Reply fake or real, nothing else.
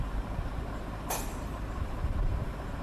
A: fake